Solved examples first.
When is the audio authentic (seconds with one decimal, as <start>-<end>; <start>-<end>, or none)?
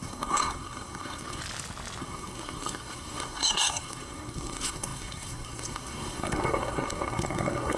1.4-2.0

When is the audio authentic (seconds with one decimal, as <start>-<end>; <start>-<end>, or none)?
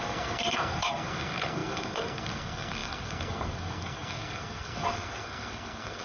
none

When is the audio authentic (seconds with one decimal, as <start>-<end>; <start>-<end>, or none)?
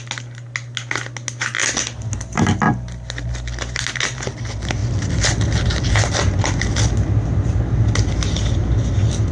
0.0-9.3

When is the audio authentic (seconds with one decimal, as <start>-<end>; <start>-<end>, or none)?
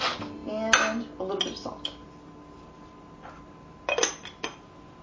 0.0-5.0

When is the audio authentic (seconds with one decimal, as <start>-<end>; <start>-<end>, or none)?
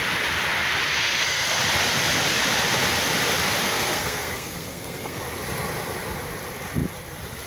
0.0-0.9; 1.6-3.6; 5.2-7.5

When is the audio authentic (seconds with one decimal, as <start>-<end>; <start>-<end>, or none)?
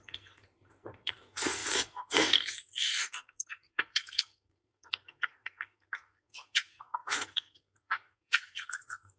none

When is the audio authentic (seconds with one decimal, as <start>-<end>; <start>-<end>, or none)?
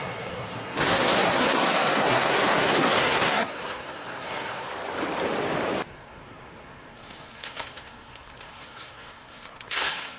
4.7-5.9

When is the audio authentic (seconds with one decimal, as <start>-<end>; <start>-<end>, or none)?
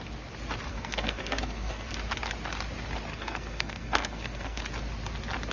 0.0-0.7; 1.9-3.1; 4.6-5.5